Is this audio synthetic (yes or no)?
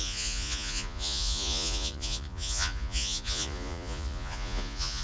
yes